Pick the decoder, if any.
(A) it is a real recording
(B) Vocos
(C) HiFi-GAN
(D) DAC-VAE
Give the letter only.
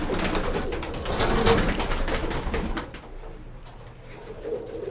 A